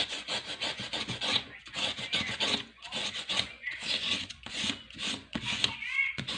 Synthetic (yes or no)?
yes